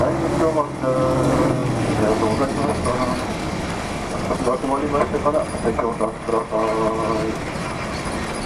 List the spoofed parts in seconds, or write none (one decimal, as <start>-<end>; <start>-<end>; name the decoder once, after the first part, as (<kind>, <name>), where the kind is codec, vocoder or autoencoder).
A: 0.0-4.8 (codec, DAC); 5.7-6.3